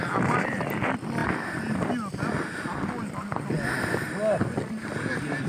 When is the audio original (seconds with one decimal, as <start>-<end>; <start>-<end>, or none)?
0.0-5.5